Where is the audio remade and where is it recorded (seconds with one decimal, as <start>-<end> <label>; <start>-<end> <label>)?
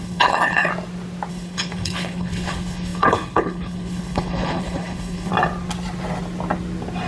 0.0-0.7 remade; 0.7-1.3 recorded; 1.3-5.3 remade; 5.3-7.1 recorded